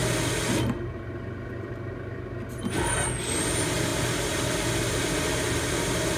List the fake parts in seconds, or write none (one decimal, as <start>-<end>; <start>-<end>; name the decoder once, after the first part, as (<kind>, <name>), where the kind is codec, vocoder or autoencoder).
none